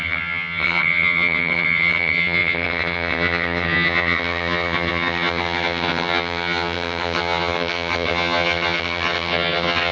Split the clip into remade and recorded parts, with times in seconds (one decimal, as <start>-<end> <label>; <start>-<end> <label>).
0.0-9.9 remade